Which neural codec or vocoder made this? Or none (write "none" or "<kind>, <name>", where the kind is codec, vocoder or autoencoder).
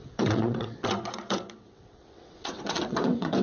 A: vocoder, WaveNeXt